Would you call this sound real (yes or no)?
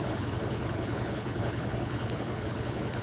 no